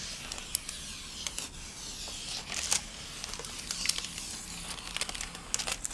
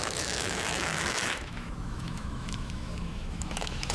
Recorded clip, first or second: first